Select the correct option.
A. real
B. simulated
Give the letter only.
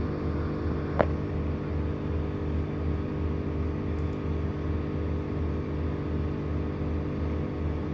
A